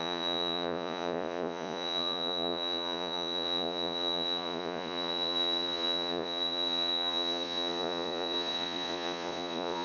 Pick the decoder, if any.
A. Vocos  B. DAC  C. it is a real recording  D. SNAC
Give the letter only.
A